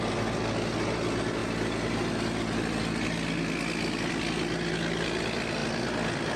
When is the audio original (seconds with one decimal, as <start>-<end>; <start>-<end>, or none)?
0.0-6.4

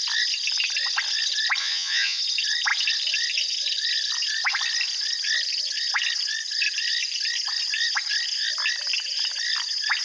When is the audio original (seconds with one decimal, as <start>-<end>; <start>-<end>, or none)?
0.0-1.6; 2.2-10.0

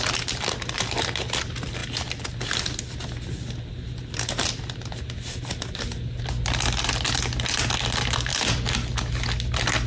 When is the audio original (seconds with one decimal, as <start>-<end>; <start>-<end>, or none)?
0.0-9.9

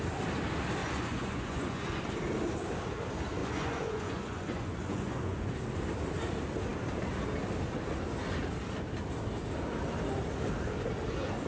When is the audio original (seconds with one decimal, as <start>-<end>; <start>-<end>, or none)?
0.0-0.8; 2.0-3.4; 5.5-11.5

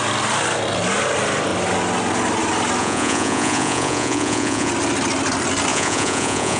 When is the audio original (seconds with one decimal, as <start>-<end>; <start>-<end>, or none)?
0.0-2.8; 4.7-5.7